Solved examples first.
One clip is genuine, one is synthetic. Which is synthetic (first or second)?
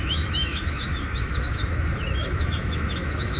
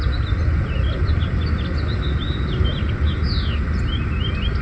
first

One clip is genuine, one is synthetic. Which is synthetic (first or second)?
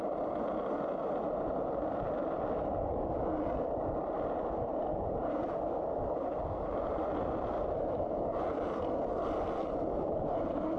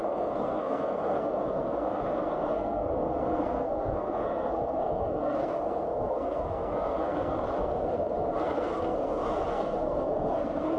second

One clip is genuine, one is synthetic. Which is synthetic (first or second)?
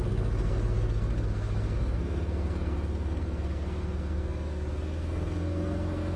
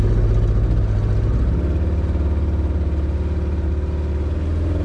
first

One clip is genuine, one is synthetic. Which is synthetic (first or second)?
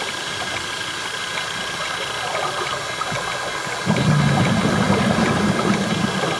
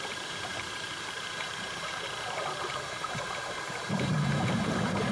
second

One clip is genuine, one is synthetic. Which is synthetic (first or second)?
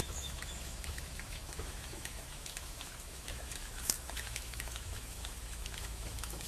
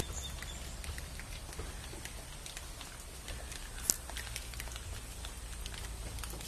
first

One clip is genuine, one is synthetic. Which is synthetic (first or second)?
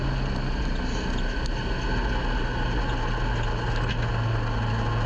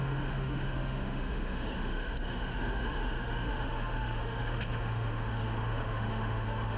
second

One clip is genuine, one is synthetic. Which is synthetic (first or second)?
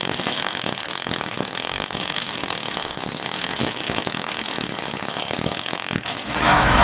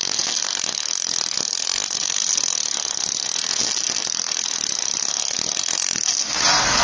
first